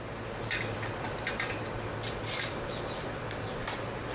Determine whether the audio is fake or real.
real